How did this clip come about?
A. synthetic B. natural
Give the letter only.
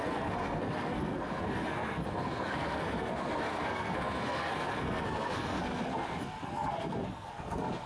A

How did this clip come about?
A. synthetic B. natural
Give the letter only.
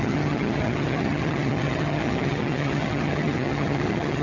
A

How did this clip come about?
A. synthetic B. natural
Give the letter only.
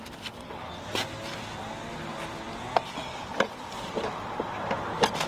B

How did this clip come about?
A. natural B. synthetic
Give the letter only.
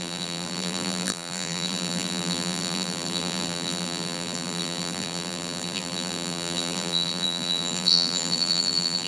B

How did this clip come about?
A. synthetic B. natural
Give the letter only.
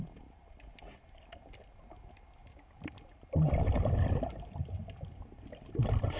B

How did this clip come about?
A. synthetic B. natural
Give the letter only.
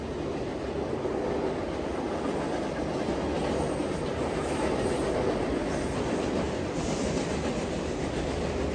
B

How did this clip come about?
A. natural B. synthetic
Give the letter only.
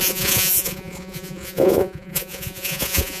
B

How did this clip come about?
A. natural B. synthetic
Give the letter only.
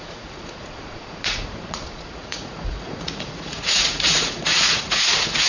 B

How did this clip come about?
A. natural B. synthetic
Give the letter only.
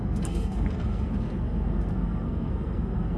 B